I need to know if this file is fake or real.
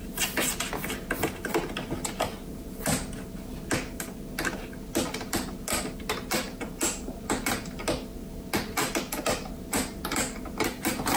real